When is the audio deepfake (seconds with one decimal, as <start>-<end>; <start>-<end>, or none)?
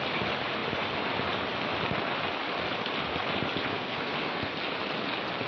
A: 3.7-4.5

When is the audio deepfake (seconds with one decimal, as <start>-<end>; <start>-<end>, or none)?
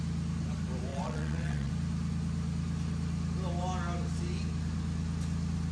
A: 0.9-1.7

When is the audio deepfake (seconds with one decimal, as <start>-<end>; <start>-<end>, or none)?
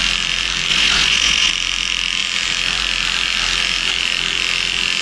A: 0.7-1.5